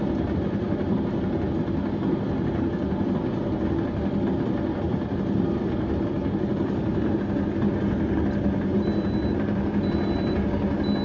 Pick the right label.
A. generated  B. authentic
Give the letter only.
B